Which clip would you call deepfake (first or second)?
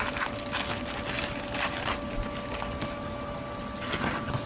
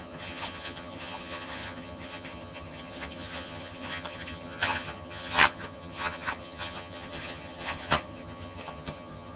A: second